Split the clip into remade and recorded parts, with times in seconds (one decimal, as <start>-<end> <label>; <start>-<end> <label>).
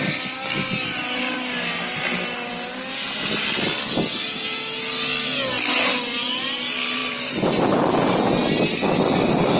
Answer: 0.0-9.6 recorded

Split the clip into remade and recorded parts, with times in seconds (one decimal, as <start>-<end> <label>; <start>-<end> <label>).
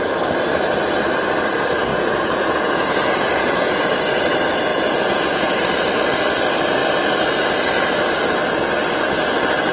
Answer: 0.0-1.9 recorded; 1.9-3.8 remade; 3.8-4.7 recorded; 4.7-5.6 remade; 5.6-9.7 recorded